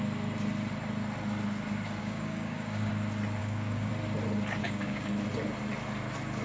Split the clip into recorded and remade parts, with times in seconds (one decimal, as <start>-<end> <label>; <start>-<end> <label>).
0.0-2.0 recorded; 2.0-2.9 remade; 2.9-3.4 recorded; 3.4-3.9 remade; 3.9-4.6 recorded; 4.6-5.1 remade; 5.1-6.4 recorded